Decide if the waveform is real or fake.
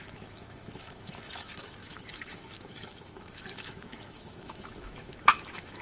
fake